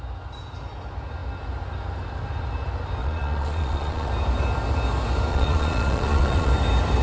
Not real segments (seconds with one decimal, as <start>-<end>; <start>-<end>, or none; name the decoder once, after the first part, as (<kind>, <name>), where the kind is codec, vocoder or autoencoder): 3.0-4.1 (vocoder, Vocos); 5.3-6.5